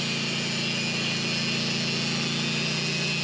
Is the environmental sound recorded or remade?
recorded